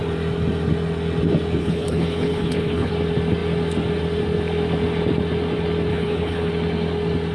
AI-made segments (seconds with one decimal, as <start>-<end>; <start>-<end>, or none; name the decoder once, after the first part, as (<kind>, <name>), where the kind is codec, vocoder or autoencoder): 1.6-2.9 (codec, HILCodec); 5.9-6.5